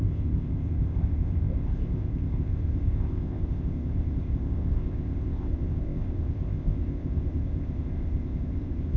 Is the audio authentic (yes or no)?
no